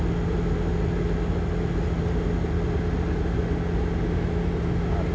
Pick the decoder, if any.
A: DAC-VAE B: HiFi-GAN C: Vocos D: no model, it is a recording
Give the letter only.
D